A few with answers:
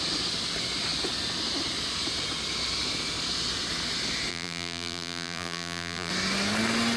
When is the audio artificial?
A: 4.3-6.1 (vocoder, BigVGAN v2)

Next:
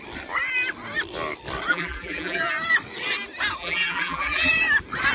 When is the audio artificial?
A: 1.7-2.4 (vocoder, BigVGAN v2); 3.6-4.5

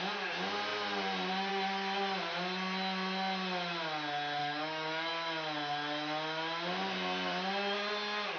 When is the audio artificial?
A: 4.4-5.1 (codec, DAC)

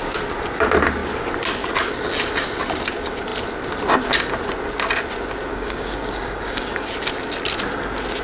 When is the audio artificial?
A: 5.5-6.9 (codec, DAC)

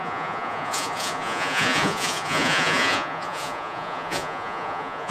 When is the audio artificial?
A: 0.0-5.1 (vocoder, Vocos)

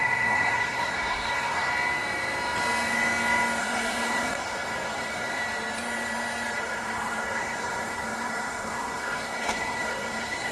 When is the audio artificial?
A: 0.0-1.7 (codec, SNAC); 3.6-5.4; 6.6-10.5